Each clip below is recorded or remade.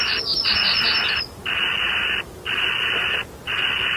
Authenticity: recorded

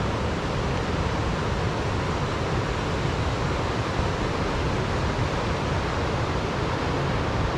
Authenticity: recorded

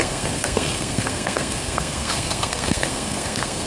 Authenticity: remade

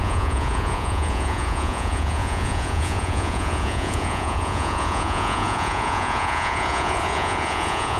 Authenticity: remade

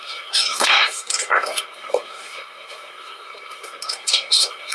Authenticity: remade